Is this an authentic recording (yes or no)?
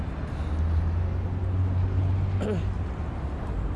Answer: yes